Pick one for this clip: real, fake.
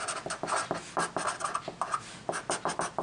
real